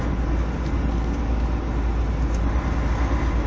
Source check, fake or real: real